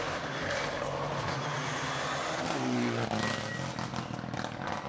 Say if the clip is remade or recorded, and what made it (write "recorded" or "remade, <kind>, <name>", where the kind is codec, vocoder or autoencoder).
recorded